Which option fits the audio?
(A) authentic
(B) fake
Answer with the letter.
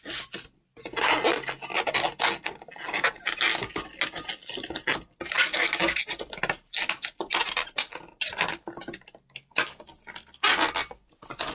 A